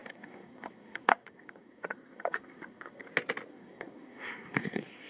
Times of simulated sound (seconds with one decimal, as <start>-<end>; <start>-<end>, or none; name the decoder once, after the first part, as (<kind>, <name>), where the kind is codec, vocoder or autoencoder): 0.0-3.1 (codec, SNAC); 3.5-5.1